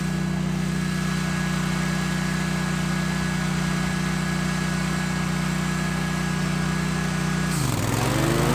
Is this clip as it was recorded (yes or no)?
yes